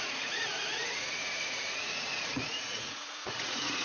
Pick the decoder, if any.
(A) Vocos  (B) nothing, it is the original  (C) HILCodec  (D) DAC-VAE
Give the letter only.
A